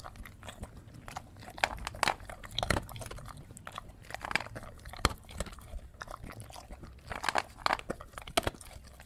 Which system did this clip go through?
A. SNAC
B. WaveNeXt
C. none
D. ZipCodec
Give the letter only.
C